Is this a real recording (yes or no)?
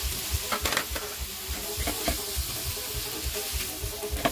yes